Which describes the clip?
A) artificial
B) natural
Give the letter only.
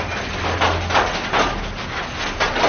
B